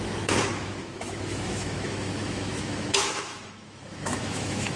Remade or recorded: remade